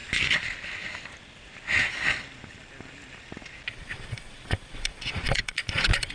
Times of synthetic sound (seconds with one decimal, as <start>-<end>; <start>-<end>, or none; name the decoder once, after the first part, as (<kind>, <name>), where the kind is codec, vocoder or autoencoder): 3.7-6.1 (vocoder, Vocos)